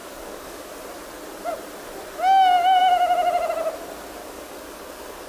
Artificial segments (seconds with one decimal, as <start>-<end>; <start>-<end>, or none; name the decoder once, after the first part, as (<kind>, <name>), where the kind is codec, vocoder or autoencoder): 0.0-0.7 (codec, DAC); 4.2-5.3